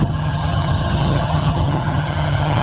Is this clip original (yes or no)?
no